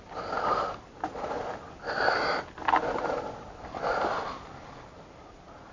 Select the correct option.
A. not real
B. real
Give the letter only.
B